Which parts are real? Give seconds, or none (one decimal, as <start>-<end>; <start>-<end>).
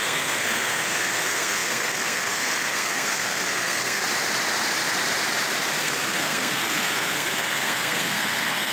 4.0-5.8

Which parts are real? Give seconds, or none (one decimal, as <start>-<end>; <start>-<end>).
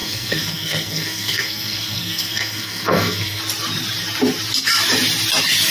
3.4-5.7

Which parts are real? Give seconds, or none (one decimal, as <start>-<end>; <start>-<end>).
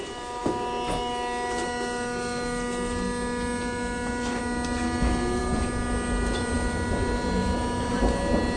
0.0-8.6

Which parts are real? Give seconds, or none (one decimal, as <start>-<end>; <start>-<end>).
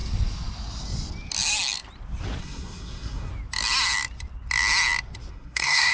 0.0-2.4; 3.3-5.3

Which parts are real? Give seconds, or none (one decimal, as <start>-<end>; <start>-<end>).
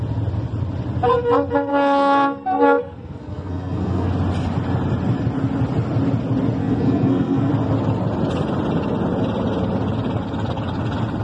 0.0-1.7; 4.1-6.6; 7.5-11.2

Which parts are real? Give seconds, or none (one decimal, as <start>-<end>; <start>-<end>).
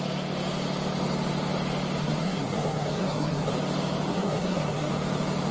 0.0-2.0; 3.5-4.1; 4.9-5.5